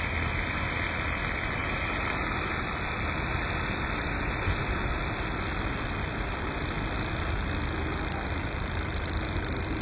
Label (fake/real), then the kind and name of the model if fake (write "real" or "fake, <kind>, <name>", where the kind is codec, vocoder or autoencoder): real